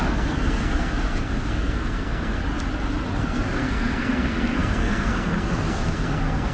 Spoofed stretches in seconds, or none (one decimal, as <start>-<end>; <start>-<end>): 0.0-2.4; 3.2-6.5